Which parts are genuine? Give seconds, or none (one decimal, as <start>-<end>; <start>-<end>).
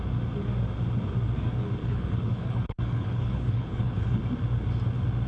0.0-1.8; 4.2-5.3